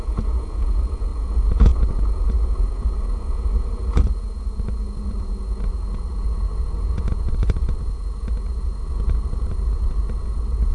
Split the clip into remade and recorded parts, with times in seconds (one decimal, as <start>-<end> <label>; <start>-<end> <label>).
0.0-10.7 remade